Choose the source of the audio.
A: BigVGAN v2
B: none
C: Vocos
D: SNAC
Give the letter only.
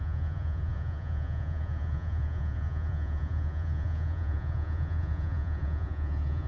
C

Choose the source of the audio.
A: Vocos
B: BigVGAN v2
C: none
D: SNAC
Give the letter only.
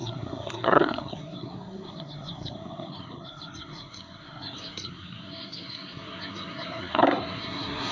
D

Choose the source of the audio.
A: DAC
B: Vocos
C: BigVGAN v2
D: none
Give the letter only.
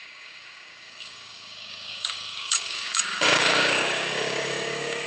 A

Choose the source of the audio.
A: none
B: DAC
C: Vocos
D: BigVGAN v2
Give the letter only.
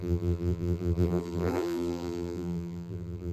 D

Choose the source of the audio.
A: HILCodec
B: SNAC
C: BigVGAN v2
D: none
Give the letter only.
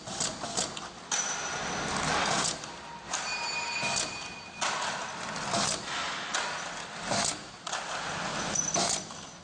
D